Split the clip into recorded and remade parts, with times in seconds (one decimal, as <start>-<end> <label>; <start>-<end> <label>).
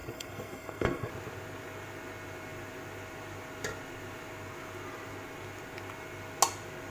0.0-1.1 remade; 1.1-6.9 recorded